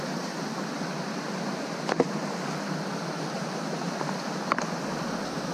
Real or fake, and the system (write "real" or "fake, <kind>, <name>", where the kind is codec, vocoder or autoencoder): real